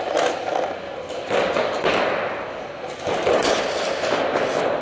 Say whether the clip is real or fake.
real